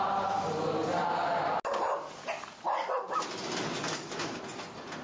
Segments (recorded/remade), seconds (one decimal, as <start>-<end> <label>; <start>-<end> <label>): 0.0-5.0 recorded